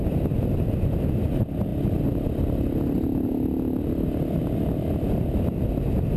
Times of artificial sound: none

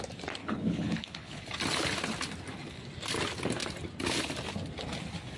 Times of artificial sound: 0.4-1.4 (codec, HILCodec)